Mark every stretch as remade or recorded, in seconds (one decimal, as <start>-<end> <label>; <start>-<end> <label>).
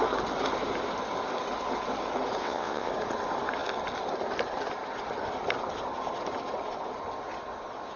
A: 0.0-2.4 recorded; 2.4-2.9 remade; 2.9-8.0 recorded